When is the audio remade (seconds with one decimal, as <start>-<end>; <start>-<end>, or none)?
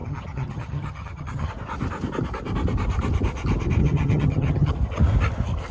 0.0-1.5; 3.8-4.7